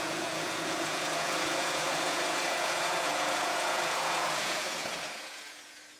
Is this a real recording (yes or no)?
no